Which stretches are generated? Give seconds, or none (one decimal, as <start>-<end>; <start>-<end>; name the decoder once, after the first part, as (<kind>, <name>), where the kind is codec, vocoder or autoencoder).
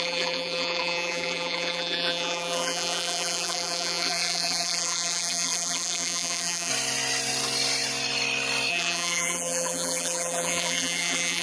0.0-6.7 (vocoder, BigVGAN v2); 8.7-11.4